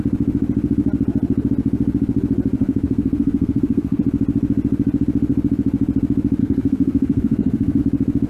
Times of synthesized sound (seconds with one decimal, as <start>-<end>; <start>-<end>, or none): 2.6-4.0; 6.4-7.8